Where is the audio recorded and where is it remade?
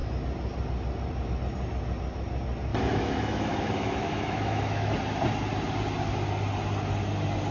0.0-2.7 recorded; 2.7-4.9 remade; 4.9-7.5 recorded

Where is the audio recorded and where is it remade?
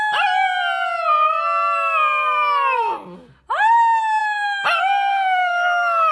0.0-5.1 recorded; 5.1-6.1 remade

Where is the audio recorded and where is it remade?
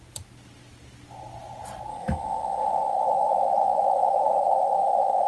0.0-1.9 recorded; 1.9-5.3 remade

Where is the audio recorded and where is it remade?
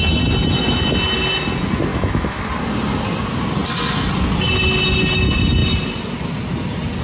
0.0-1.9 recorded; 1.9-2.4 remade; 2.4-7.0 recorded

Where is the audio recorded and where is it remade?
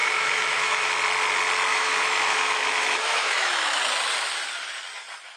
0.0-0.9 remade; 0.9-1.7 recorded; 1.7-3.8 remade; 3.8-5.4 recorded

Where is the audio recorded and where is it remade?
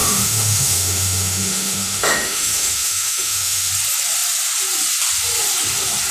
0.0-3.7 remade; 3.7-6.1 recorded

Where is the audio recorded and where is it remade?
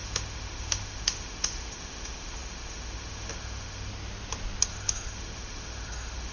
0.0-3.9 remade; 3.9-4.7 recorded; 4.7-6.3 remade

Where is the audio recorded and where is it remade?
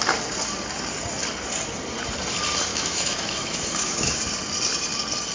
0.0-2.7 recorded; 2.7-4.3 remade; 4.3-5.3 recorded